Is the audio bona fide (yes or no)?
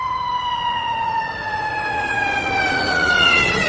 no